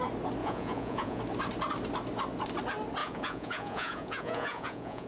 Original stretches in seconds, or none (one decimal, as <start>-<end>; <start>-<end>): 0.0-0.4; 1.2-3.0